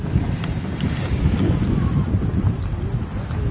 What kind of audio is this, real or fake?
real